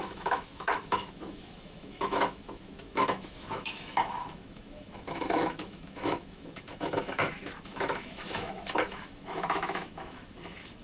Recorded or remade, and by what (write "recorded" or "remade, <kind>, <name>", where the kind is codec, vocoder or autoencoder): remade, autoencoder, DAC-VAE